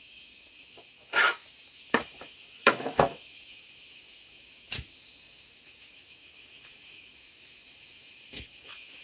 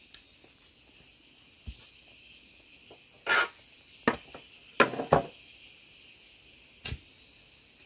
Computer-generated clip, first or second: first